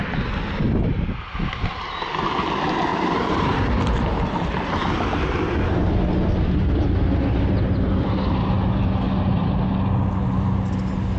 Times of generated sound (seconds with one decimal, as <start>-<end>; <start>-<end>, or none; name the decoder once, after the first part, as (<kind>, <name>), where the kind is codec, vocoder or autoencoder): 2.9-3.6 (vocoder, BigVGAN v2)